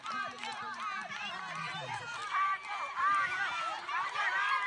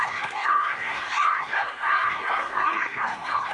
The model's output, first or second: second